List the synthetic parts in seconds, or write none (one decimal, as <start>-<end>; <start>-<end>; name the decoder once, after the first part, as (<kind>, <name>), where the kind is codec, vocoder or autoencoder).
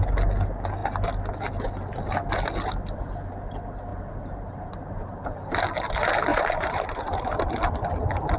6.3-7.2 (vocoder, BigVGAN v2)